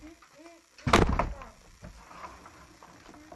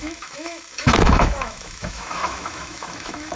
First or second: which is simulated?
second